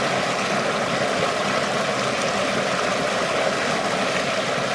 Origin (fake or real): real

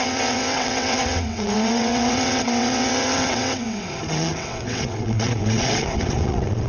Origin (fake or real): fake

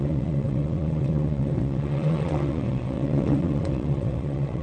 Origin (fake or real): fake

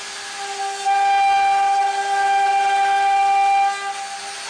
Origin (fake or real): real